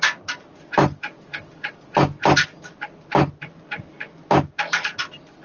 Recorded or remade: recorded